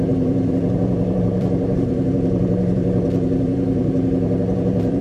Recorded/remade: remade